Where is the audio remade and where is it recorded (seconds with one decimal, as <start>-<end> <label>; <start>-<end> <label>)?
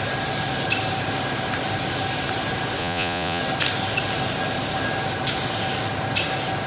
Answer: 0.0-2.8 recorded; 2.8-3.4 remade; 3.4-6.7 recorded